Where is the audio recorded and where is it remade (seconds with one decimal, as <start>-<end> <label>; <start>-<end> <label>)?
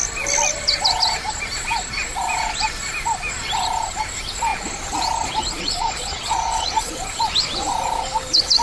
0.0-5.6 recorded; 5.6-6.9 remade; 6.9-8.6 recorded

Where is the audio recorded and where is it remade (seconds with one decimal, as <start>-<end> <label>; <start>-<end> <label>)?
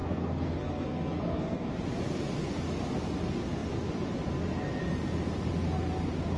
0.0-1.7 remade; 1.7-6.4 recorded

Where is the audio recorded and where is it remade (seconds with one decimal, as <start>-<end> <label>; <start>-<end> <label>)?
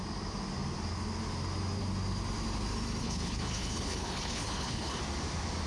0.0-3.0 recorded; 3.0-5.0 remade; 5.0-5.7 recorded